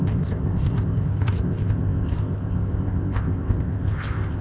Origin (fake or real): fake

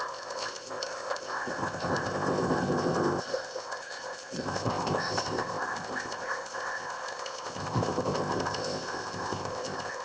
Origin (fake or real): fake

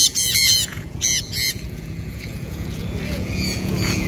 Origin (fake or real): fake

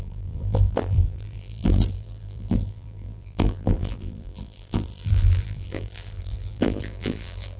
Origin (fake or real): fake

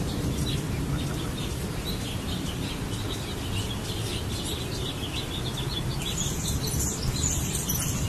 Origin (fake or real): real